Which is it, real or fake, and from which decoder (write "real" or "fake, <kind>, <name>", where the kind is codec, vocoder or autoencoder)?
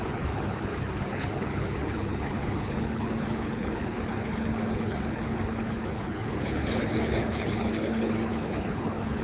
fake, codec, HILCodec